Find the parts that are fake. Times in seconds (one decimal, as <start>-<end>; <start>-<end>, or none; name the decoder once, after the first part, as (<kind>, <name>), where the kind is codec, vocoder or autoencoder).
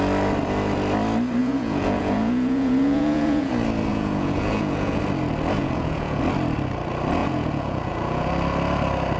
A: 1.4-3.5 (vocoder, Vocos); 3.9-5.0; 5.6-6.2; 7.2-8.3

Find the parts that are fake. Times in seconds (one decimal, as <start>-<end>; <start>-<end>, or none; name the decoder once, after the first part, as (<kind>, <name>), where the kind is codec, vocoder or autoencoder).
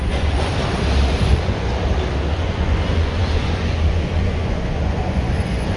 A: 0.0-0.5 (vocoder, Vocos); 1.2-1.7; 2.4-5.8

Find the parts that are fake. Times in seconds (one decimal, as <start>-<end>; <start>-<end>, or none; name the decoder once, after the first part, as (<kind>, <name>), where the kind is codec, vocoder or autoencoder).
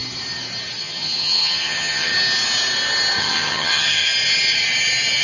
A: 0.8-2.1 (vocoder, HiFi-GAN); 3.2-4.1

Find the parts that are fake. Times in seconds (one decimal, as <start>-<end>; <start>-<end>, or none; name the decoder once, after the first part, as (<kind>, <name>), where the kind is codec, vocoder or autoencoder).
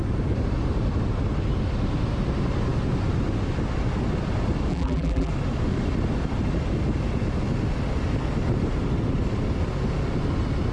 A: 4.7-5.3 (vocoder, BigVGAN v2)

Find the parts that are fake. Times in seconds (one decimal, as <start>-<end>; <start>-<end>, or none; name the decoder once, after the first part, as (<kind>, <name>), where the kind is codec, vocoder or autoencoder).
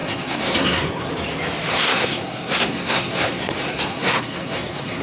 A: 0.0-1.1 (codec, SNAC); 1.7-5.0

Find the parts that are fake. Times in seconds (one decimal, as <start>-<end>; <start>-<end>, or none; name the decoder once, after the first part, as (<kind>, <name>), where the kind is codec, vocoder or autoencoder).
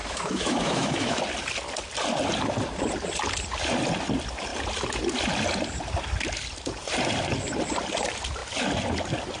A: 0.0-1.2 (autoencoder, DAC-VAE)